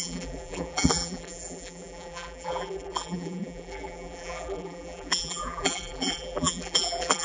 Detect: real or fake fake